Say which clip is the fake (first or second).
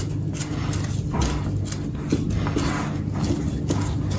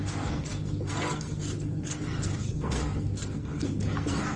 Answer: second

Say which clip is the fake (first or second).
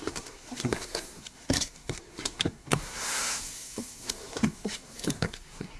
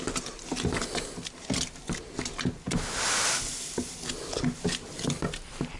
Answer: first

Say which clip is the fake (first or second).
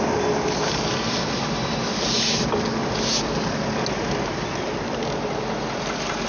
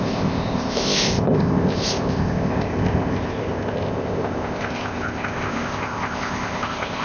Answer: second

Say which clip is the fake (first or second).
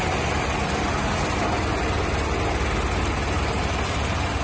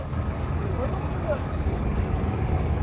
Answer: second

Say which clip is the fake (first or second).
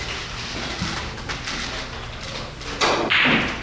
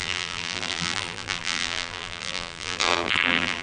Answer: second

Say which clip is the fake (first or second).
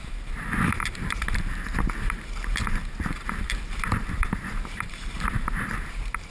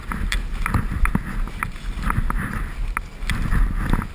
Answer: first